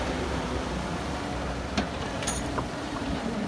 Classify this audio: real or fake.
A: fake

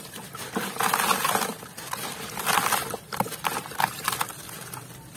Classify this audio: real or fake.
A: real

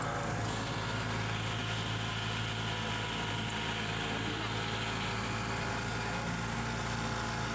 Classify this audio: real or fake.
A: real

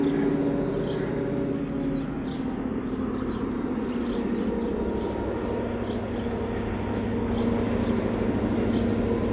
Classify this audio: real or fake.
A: real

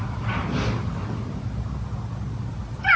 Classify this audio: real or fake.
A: real